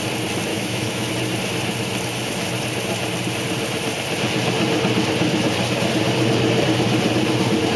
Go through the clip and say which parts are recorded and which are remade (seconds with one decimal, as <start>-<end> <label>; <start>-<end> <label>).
0.0-0.5 recorded; 0.5-1.1 remade; 1.1-7.8 recorded